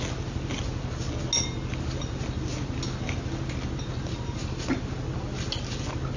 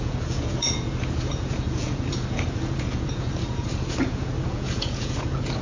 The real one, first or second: first